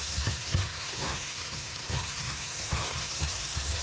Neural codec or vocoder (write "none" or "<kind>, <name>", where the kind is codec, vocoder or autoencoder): codec, SNAC